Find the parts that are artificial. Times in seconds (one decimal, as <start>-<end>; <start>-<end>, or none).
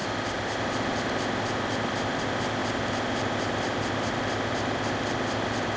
none